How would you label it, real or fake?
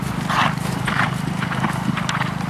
real